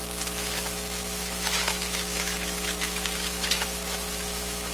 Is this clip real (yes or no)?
no